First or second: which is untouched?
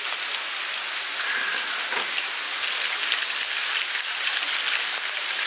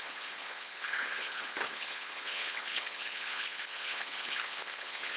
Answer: first